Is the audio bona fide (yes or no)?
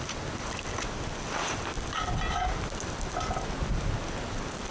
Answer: yes